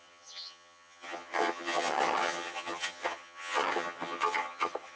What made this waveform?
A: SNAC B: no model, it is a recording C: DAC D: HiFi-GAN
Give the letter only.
D